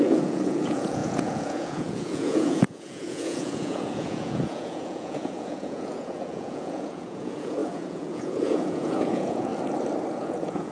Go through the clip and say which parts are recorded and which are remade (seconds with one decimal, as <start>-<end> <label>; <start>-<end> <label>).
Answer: 0.0-9.5 remade; 9.5-10.1 recorded; 10.1-10.7 remade